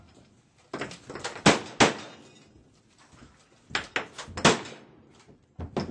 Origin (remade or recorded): recorded